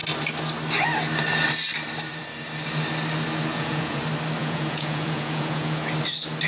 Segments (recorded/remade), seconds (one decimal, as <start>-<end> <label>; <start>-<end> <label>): 0.0-3.5 recorded; 3.5-4.0 remade; 4.0-4.4 recorded; 4.4-5.9 remade; 5.9-6.5 recorded